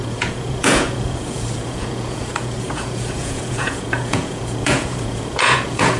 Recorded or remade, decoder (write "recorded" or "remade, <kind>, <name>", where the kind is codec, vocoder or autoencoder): remade, vocoder, Vocos